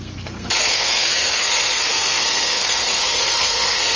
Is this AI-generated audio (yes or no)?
yes